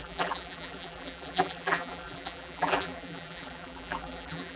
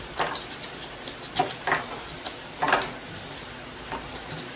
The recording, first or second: second